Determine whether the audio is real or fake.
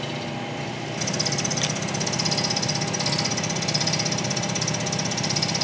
real